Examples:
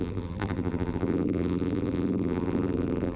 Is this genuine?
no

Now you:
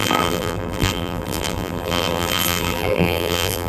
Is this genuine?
no